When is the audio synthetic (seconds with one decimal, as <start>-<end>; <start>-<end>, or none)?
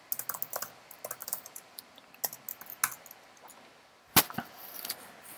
1.2-1.8